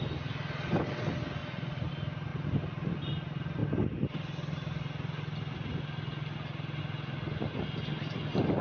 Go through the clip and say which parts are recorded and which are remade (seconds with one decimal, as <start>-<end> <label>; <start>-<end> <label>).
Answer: 0.0-1.4 recorded; 1.4-1.9 remade; 1.9-8.6 recorded